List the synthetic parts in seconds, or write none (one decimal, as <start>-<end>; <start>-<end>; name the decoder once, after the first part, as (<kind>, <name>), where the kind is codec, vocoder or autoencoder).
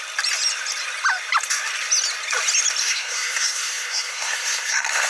2.8-5.1 (codec, SNAC)